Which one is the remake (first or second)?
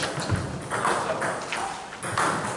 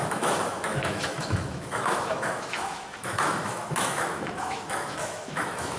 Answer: second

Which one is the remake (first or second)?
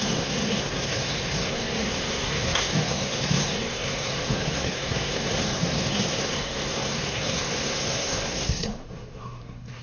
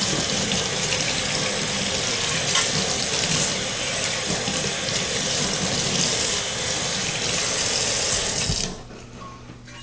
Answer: first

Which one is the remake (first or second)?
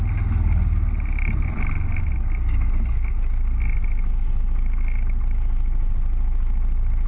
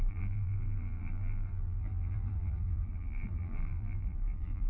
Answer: second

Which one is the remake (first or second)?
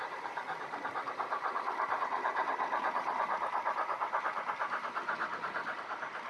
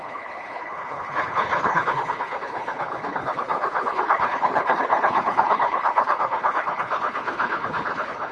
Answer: second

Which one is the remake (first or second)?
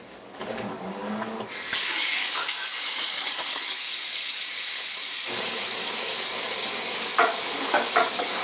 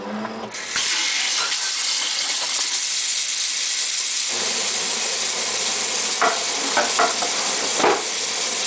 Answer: first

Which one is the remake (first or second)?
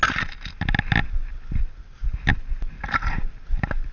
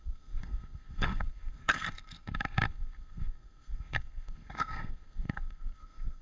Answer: second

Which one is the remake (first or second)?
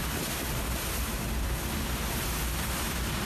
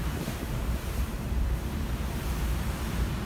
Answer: second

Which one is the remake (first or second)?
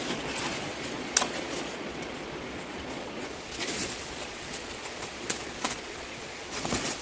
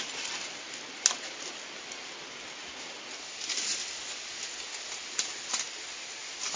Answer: first